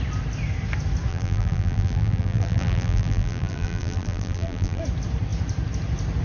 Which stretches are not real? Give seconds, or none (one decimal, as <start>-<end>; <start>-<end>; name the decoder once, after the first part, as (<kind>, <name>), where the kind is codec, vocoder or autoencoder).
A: 1.1-4.8 (vocoder, BigVGAN v2)